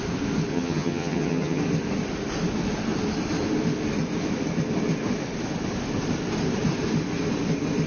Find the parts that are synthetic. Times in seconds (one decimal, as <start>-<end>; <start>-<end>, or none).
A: 0.5-1.6